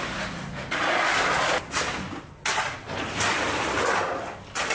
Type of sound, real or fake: real